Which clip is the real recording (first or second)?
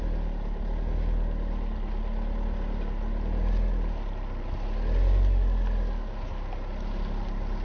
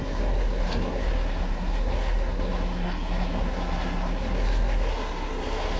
first